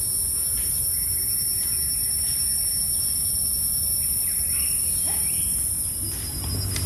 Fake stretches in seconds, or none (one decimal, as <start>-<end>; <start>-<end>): 2.0-5.4